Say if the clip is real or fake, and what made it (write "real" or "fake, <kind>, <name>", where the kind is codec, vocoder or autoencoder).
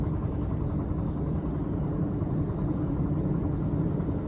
real